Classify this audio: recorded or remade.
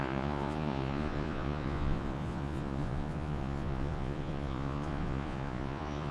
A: remade